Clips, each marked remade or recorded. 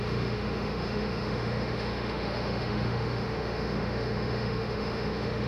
remade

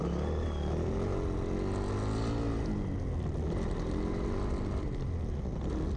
recorded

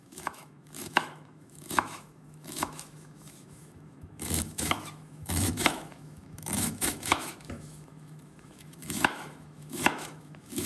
remade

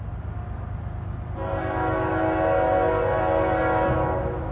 recorded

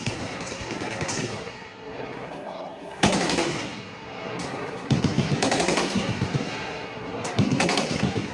remade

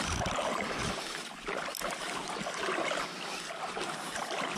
recorded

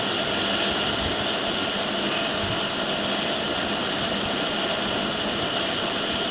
recorded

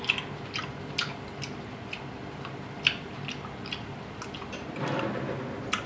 recorded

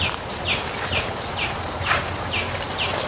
recorded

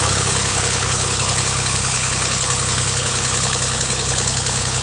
remade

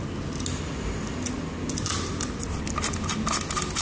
recorded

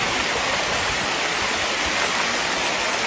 recorded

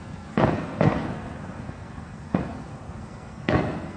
remade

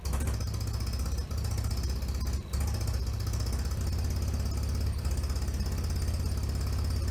recorded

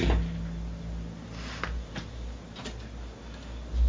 recorded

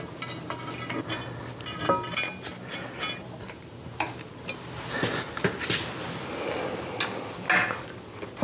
recorded